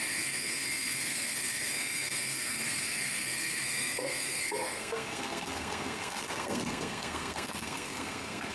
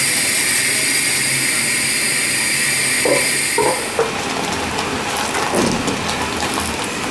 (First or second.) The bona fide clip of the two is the second